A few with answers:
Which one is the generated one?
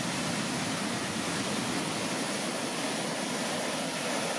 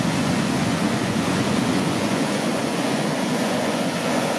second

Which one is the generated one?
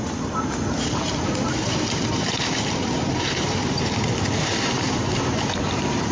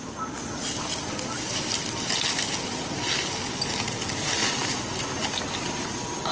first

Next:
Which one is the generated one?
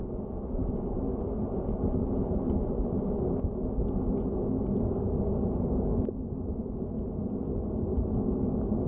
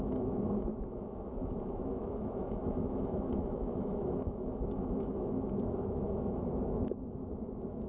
second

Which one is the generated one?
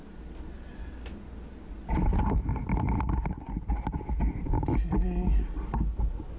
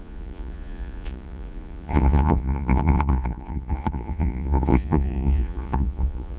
second